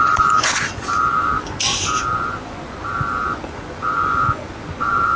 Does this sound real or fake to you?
fake